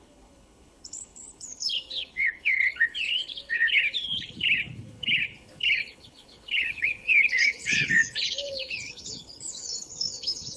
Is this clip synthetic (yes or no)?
yes